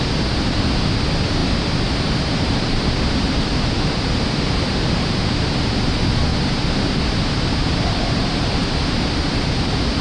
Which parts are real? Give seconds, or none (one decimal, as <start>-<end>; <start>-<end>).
0.0-10.0